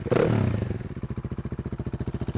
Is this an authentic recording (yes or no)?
yes